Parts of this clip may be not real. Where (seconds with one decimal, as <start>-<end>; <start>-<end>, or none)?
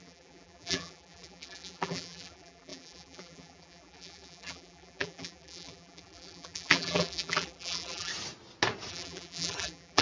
0.0-8.1; 8.9-10.0